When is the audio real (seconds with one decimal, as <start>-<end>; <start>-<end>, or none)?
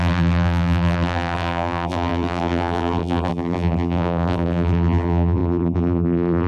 none